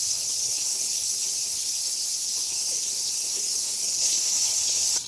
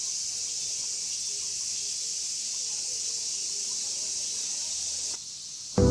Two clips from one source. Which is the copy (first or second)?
first